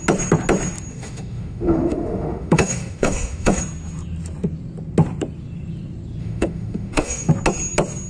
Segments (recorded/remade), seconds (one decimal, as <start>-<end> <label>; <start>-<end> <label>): 0.0-0.9 recorded; 0.9-3.6 remade; 3.6-6.2 recorded; 6.2-7.3 remade; 7.3-8.1 recorded